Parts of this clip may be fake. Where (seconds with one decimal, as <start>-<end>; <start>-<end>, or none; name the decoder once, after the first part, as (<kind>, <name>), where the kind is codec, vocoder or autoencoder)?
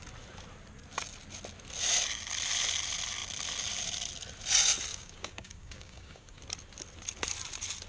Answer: 4.9-6.4 (codec, DAC)